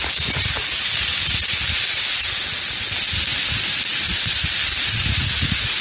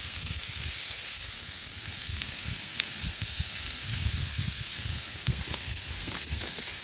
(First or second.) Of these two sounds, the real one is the first